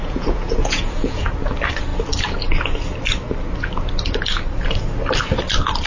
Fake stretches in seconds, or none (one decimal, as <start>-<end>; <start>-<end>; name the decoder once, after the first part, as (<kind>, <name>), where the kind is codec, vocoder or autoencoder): 0.0-1.3 (vocoder, Vocos)